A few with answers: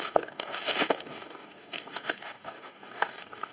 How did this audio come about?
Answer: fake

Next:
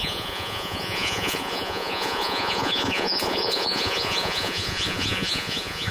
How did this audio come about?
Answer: fake